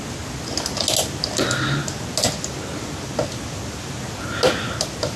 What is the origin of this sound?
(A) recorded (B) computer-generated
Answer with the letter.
A